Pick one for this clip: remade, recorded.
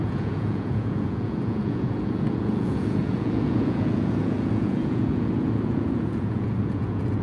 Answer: remade